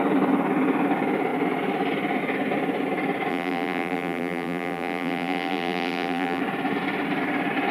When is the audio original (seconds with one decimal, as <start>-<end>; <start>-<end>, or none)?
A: 0.0-3.3; 6.4-7.7